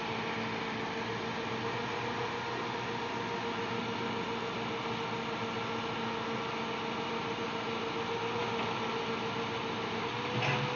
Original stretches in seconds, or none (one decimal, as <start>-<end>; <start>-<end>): 0.0-10.8